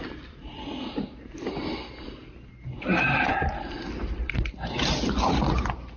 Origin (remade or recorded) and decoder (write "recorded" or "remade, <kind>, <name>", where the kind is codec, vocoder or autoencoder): recorded